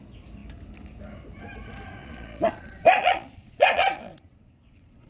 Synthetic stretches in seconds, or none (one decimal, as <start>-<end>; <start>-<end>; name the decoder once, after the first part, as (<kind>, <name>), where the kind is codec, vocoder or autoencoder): 2.0-5.1 (vocoder, Vocos)